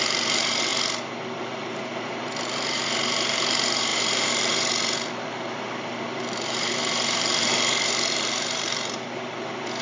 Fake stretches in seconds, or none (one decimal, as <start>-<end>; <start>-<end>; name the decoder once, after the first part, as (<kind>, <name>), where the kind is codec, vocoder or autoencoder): 0.0-0.7 (vocoder, BigVGAN v2); 1.4-9.8